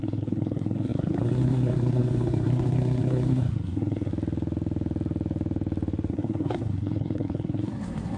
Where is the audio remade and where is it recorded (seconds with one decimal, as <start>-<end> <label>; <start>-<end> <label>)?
0.0-4.1 remade; 4.1-6.1 recorded; 6.1-8.2 remade